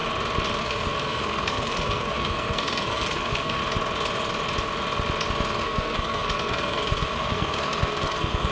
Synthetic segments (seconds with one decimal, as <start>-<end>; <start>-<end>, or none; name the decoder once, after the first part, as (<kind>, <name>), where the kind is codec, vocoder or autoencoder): 0.6-3.6 (codec, SNAC); 5.6-8.5